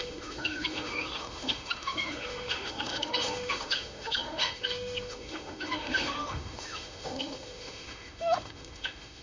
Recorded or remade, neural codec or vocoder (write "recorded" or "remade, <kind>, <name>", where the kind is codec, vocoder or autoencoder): remade, autoencoder, DAC-VAE